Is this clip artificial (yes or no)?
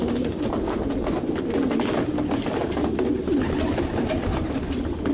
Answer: no